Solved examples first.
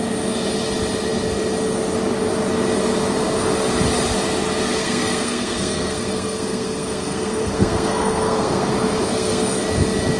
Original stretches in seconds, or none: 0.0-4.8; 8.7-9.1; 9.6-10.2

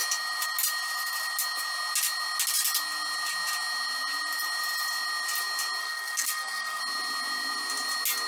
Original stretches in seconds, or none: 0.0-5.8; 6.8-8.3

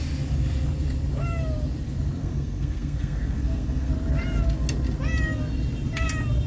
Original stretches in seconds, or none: 0.0-2.2; 3.9-6.5

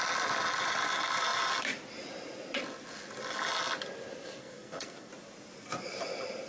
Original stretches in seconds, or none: 0.0-4.4; 5.1-6.5

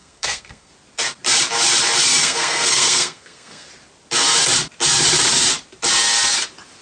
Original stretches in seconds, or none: 0.7-2.2; 3.7-6.8